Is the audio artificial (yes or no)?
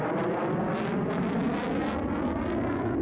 no